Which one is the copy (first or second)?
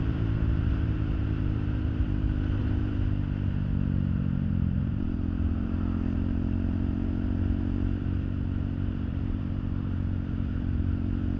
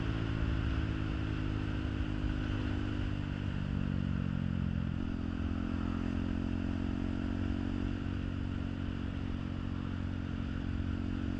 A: first